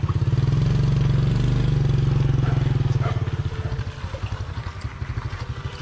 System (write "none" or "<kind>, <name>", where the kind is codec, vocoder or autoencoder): none